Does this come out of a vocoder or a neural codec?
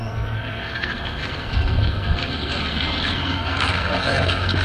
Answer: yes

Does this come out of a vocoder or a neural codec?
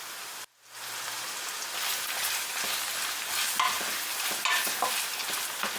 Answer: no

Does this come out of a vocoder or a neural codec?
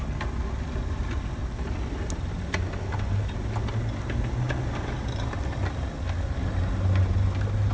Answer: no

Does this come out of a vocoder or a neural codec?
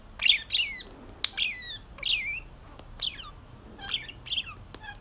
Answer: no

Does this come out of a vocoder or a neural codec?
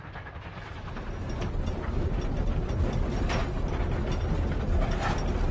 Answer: no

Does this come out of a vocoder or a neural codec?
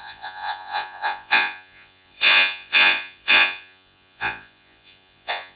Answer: yes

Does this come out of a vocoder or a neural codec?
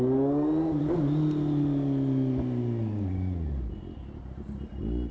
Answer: no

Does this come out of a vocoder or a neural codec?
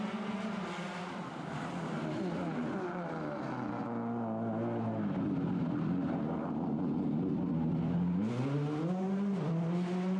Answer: no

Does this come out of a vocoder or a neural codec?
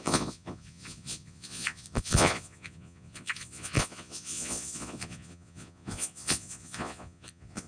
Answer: yes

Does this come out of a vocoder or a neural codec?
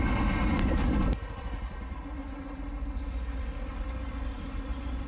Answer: no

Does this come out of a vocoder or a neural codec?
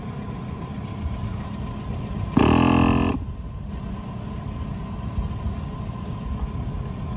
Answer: no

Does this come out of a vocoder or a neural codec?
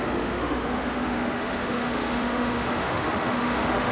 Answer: yes